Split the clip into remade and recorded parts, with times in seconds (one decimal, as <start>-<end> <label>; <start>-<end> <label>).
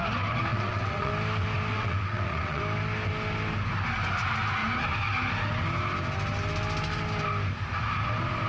0.0-0.5 recorded; 0.5-1.1 remade; 1.1-1.7 recorded; 1.7-2.6 remade; 2.6-8.5 recorded